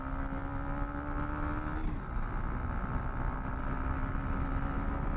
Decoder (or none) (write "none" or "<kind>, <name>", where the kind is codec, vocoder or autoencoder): none